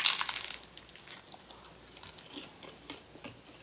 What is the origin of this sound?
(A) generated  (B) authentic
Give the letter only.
B